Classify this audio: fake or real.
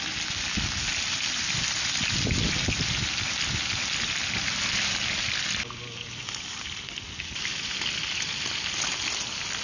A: real